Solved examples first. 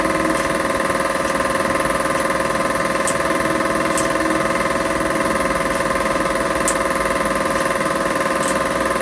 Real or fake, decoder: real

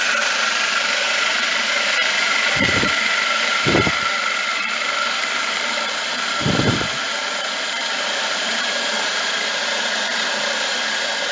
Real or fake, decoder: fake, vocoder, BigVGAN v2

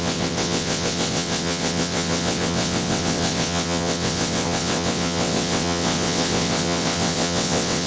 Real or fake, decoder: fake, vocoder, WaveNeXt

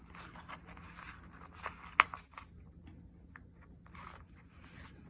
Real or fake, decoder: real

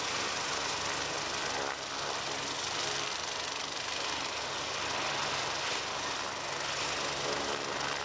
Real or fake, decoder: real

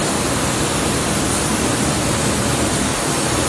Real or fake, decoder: real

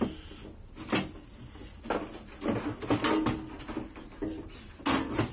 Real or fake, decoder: real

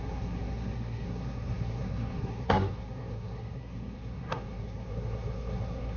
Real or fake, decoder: fake, codec, SNAC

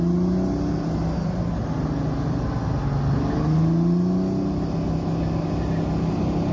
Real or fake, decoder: real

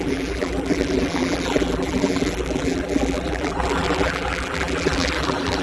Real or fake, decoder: fake, vocoder, BigVGAN v2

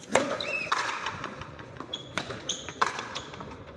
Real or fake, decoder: fake, vocoder, Vocos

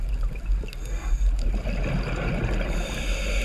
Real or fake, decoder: real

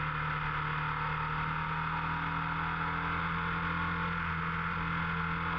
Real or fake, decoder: real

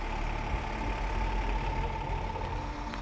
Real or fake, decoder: real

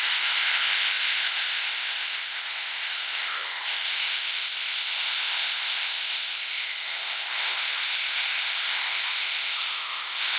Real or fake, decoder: fake, codec, ZipCodec